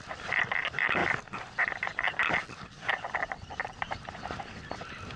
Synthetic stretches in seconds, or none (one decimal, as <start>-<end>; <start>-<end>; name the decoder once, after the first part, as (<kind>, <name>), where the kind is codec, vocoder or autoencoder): none